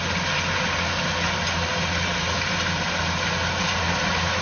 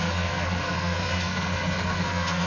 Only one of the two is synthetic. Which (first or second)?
second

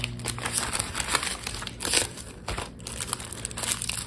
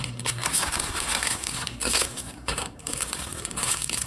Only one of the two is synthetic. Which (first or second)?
second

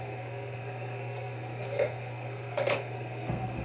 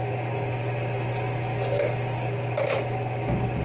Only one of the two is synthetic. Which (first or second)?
first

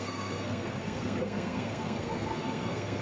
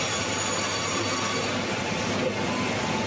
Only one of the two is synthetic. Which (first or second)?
first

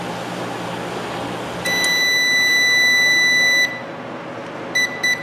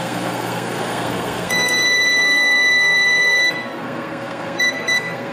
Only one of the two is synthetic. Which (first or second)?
second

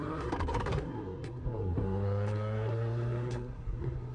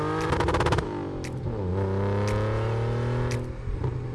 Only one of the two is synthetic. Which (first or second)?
first